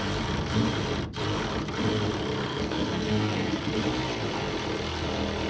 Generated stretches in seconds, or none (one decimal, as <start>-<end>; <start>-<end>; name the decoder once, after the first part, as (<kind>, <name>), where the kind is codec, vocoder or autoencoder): 2.5-3.7 (codec, SNAC)